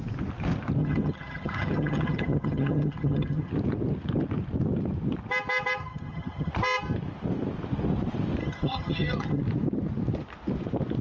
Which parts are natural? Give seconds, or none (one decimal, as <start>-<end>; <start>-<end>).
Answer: 0.0-0.8; 3.5-5.8; 6.5-8.4; 9.4-11.0